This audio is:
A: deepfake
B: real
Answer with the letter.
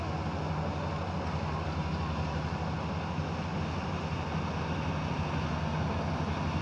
B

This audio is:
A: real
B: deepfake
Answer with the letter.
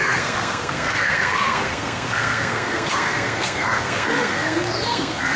B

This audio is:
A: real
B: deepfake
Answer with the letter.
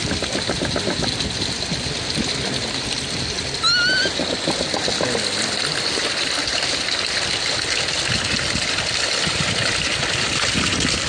A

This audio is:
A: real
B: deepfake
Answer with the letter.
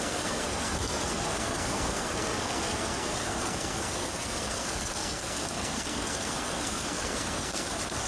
B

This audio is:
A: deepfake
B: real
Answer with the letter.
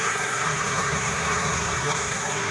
A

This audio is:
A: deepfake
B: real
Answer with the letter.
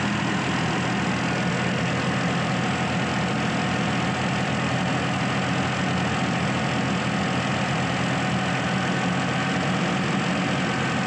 B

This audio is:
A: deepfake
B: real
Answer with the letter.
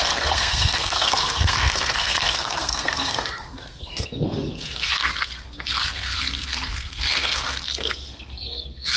A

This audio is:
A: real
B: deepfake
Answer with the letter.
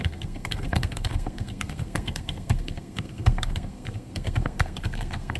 B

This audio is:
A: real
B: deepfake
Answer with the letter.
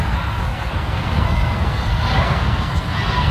B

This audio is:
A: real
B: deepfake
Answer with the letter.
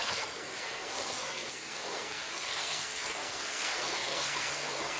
B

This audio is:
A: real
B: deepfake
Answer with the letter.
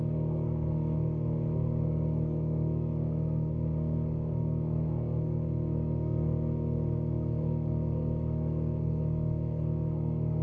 B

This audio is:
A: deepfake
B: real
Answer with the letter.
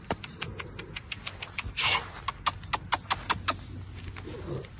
B